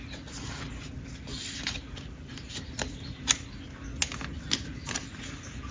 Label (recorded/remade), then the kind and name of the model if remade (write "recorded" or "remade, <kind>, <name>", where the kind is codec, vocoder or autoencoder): recorded